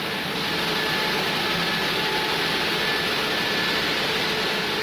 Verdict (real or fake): real